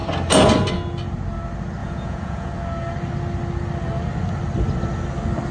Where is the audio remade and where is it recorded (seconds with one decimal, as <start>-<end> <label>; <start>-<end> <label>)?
0.0-1.8 recorded; 1.8-2.5 remade; 2.5-5.5 recorded